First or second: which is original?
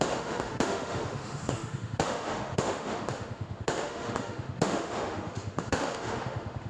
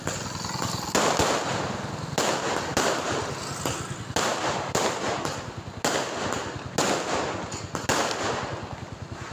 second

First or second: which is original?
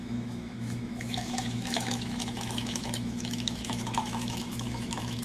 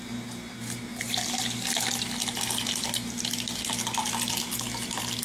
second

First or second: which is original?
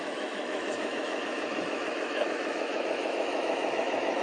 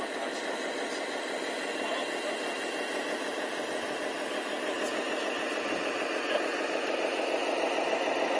second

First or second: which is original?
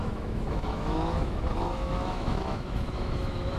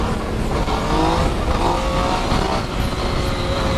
second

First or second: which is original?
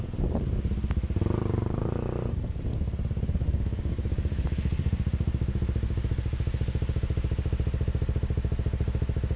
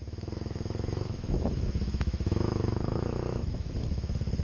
first